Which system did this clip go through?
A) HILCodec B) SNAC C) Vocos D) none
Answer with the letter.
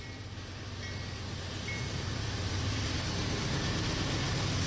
D